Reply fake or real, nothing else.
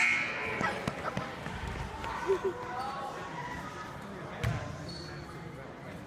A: real